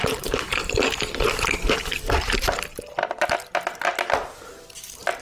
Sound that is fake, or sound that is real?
real